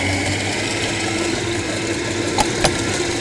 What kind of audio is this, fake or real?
real